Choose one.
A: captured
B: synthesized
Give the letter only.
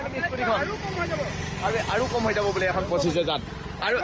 A